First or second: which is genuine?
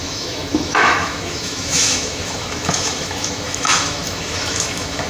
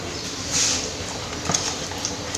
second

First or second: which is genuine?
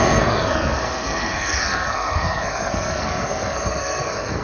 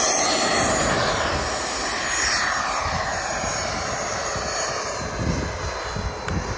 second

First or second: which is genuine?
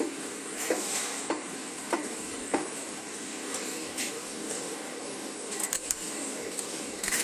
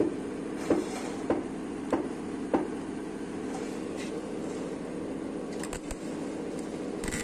second